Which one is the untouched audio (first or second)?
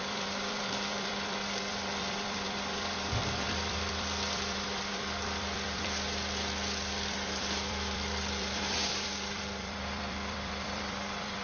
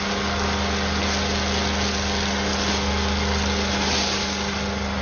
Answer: second